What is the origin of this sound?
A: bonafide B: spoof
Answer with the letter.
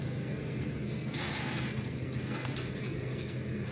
B